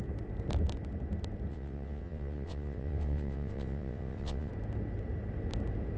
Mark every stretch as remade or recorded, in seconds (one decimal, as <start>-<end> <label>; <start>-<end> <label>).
0.0-1.5 recorded; 1.5-4.5 remade; 4.5-6.0 recorded